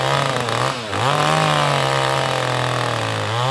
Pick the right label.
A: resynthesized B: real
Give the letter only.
B